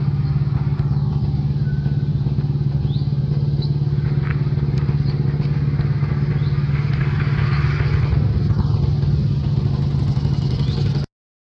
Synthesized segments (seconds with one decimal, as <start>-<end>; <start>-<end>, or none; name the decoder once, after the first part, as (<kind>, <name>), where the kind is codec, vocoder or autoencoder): none